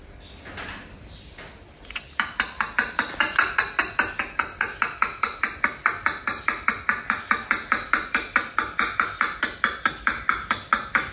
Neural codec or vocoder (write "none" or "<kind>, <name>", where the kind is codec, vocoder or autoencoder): none